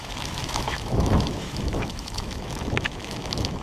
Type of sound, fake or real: fake